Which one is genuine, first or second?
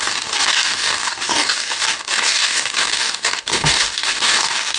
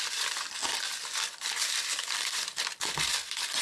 second